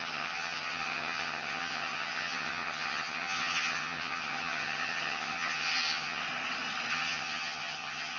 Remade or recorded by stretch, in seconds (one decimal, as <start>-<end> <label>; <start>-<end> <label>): 0.0-6.2 remade; 6.2-6.9 recorded; 6.9-8.2 remade